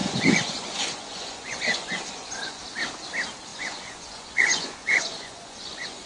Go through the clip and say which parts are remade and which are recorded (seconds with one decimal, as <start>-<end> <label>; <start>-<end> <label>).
0.0-2.6 remade; 2.6-3.5 recorded; 3.5-6.1 remade